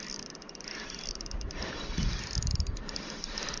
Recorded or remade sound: recorded